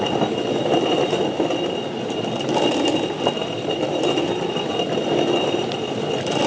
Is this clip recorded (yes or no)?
yes